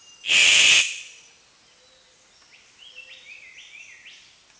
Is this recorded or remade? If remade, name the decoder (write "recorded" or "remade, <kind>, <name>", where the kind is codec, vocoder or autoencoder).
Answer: recorded